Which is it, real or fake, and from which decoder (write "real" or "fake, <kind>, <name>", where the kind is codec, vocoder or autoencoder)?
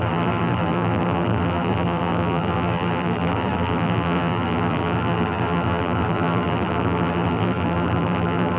fake, vocoder, BigVGAN v2